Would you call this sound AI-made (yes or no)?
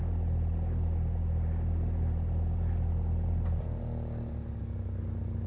no